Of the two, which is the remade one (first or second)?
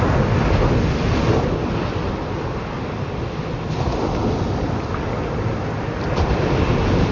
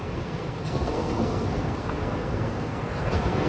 second